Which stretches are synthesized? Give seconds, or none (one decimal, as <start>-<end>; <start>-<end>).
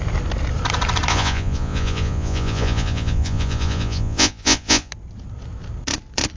1.1-4.9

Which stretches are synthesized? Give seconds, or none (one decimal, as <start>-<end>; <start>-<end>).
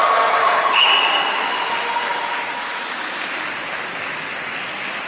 0.4-0.9